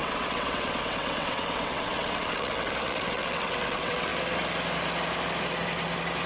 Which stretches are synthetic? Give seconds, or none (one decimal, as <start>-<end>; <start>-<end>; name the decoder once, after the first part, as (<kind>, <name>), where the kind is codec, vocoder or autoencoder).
0.0-4.1 (vocoder, WaveNeXt)